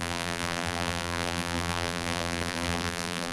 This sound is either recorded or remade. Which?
remade